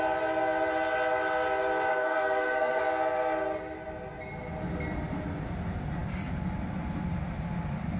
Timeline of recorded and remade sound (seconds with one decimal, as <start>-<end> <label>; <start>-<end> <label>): 0.0-1.9 recorded; 1.9-2.8 remade; 2.8-8.0 recorded